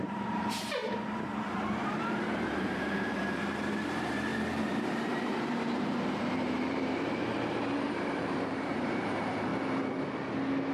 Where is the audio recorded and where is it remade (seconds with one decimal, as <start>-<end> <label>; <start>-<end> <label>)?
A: 0.0-9.5 remade; 9.5-10.7 recorded